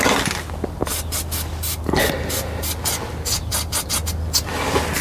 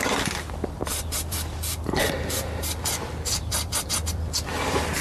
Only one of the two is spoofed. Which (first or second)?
second